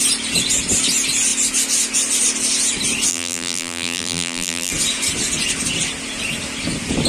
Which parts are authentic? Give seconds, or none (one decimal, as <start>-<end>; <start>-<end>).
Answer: 0.0-3.1; 4.7-7.1